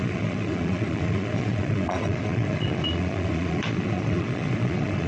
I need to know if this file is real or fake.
fake